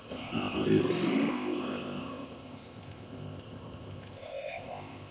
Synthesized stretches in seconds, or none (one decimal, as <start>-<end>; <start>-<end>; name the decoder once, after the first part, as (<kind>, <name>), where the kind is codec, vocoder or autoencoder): 0.0-0.8 (codec, ZipCodec); 1.3-5.1